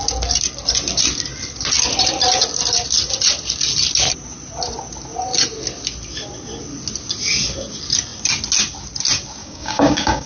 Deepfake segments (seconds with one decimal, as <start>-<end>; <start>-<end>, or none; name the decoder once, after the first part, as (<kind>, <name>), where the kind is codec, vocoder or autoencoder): 9.4-10.3 (codec, DAC)